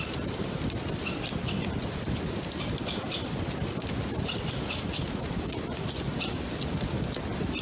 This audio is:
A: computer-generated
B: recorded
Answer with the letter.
B